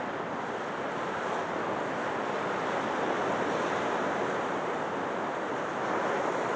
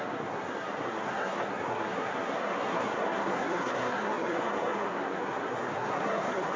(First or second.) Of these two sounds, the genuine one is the first